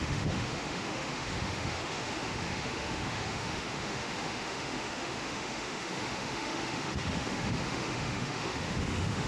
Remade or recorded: remade